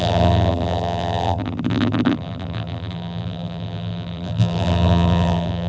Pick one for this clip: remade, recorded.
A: remade